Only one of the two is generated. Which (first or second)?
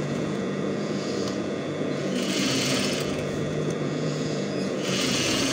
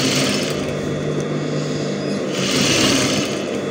first